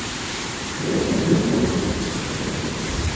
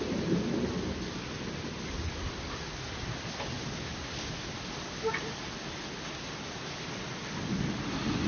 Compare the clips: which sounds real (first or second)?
second